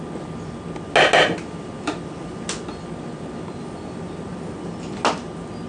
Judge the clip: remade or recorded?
recorded